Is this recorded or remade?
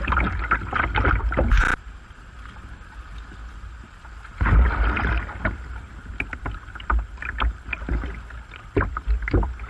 recorded